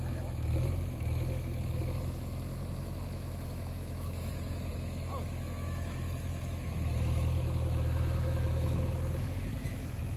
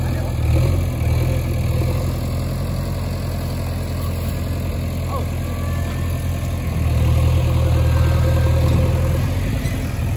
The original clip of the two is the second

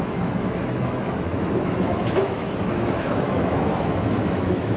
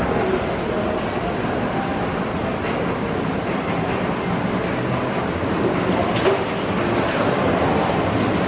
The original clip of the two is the second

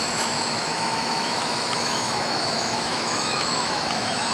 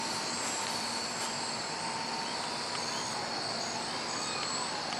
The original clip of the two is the second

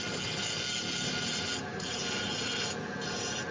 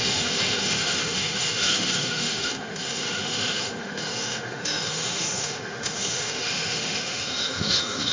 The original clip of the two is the first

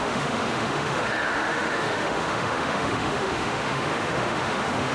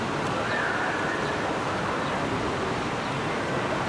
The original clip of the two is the second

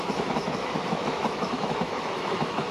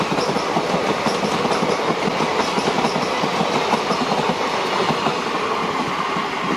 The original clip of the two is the second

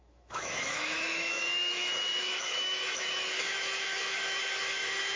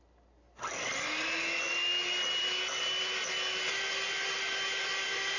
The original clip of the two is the second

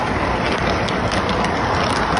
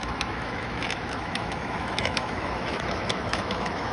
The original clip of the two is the first